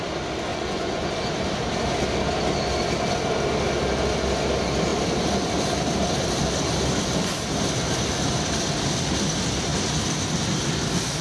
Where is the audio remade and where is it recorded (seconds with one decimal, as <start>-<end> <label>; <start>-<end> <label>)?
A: 0.0-0.5 recorded; 0.5-1.1 remade; 1.1-11.2 recorded

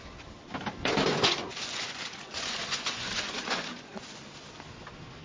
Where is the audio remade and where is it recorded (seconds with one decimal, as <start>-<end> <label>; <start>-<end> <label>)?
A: 0.0-1.1 recorded; 1.1-4.2 remade; 4.2-5.2 recorded

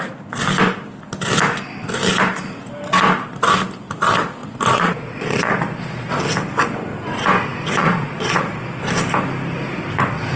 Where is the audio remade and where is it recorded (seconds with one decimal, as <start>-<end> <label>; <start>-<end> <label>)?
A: 0.0-4.4 recorded; 4.4-6.1 remade; 6.1-7.8 recorded; 7.8-8.8 remade; 8.8-10.4 recorded

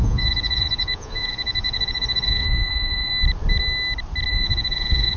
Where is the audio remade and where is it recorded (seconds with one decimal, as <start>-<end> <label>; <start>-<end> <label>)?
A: 0.0-3.1 remade; 3.1-4.3 recorded; 4.3-5.2 remade

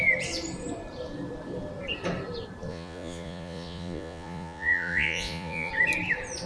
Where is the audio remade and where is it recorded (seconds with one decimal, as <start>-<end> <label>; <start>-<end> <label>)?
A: 0.0-2.7 recorded; 2.7-5.7 remade; 5.7-6.5 recorded

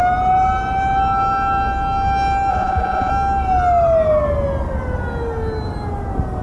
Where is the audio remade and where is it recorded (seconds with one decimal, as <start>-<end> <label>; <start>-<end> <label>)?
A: 0.0-2.5 recorded; 2.5-3.1 remade; 3.1-6.4 recorded

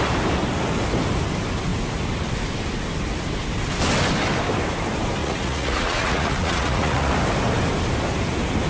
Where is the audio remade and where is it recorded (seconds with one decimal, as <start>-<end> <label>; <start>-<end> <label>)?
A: 0.0-5.2 recorded; 5.2-7.1 remade; 7.1-8.7 recorded

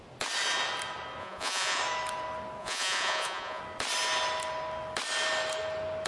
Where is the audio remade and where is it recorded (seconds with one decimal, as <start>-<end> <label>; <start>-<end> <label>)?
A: 0.0-1.2 recorded; 1.2-1.8 remade; 1.8-2.6 recorded; 2.6-3.6 remade; 3.6-6.1 recorded